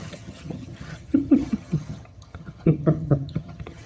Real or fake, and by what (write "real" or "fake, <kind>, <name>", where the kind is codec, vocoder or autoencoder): fake, vocoder, HiFi-GAN